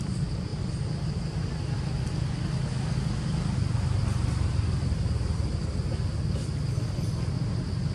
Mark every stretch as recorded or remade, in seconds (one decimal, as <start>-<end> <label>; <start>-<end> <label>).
0.0-7.9 recorded

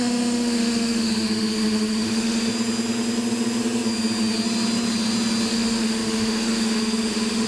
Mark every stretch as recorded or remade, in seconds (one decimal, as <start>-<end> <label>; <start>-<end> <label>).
0.0-2.5 remade; 2.5-5.5 recorded; 5.5-7.5 remade

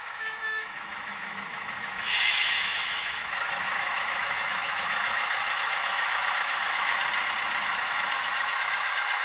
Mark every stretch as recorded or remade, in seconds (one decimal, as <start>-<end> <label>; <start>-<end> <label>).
0.0-7.0 remade; 7.0-7.6 recorded; 7.6-9.2 remade

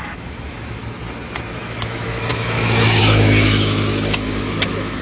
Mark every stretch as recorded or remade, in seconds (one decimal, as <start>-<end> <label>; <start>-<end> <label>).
0.0-0.8 remade; 0.8-1.6 recorded; 1.6-5.0 remade

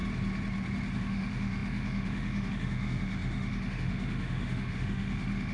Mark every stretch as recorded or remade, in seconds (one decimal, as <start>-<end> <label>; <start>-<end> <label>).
0.0-1.0 recorded; 1.0-5.5 remade

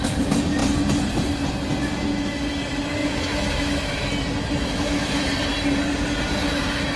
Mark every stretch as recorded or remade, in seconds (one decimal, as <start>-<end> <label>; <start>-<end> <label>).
0.0-3.0 recorded; 3.0-4.1 remade; 4.1-4.6 recorded; 4.6-5.2 remade; 5.2-7.0 recorded

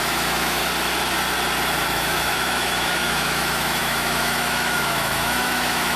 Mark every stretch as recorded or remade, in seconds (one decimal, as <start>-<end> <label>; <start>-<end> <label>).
0.0-0.6 remade; 0.6-1.9 recorded; 1.9-6.0 remade